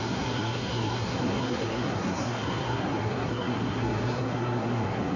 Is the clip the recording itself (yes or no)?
no